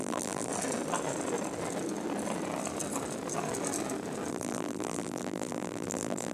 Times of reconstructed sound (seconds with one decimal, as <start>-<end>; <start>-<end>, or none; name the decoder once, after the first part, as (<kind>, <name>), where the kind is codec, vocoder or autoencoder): 0.0-0.5 (vocoder, BigVGAN v2); 4.3-6.3

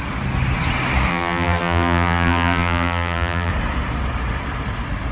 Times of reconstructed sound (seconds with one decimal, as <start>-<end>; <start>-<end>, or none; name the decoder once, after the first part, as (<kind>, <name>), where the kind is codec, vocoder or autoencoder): 1.1-3.5 (vocoder, BigVGAN v2)

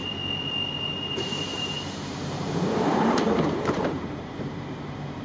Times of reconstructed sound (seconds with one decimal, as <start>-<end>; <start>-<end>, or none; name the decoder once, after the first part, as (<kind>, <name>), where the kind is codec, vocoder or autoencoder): 0.9-5.2 (vocoder, BigVGAN v2)

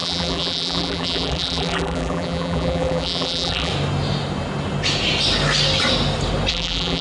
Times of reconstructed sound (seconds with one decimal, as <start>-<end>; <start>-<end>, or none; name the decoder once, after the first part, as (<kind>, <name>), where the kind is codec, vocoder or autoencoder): 0.0-3.7 (vocoder, BigVGAN v2); 6.5-7.0

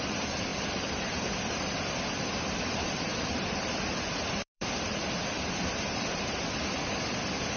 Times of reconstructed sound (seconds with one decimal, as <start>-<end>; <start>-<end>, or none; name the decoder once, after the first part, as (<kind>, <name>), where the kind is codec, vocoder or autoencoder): 0.5-4.8 (vocoder, BigVGAN v2)

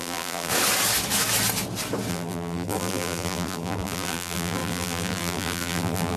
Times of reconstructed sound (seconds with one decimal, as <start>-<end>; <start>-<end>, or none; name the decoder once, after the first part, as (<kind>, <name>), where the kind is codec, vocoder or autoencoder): 0.0-0.5 (vocoder, BigVGAN v2); 2.1-6.2